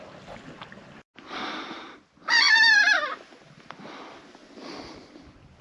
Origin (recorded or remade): recorded